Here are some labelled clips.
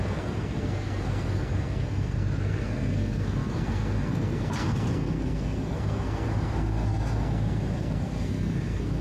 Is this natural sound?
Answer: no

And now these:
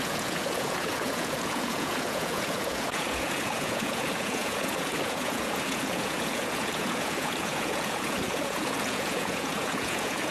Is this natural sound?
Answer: no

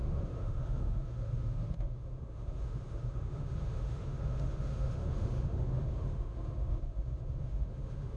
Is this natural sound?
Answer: no